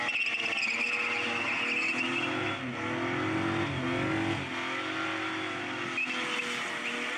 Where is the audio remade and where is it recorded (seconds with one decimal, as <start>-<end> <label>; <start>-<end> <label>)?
0.0-7.2 recorded